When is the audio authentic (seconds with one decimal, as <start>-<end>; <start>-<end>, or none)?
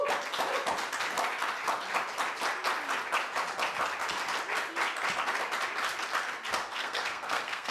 0.0-6.8